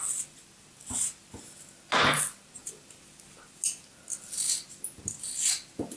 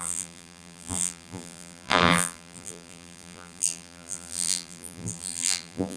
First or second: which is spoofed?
second